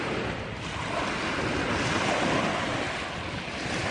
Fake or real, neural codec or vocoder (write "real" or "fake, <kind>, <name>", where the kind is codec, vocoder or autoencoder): real